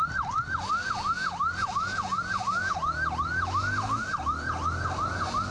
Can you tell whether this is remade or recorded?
recorded